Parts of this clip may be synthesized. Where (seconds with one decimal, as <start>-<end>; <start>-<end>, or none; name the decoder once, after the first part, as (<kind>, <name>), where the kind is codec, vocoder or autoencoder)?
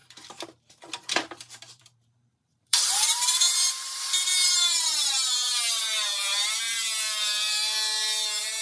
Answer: 0.0-8.6 (vocoder, BigVGAN v2)